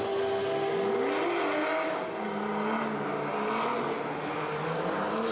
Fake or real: real